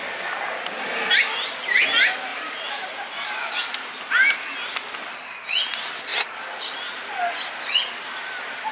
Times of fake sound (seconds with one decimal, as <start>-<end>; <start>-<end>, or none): 2.3-4.0; 6.1-6.6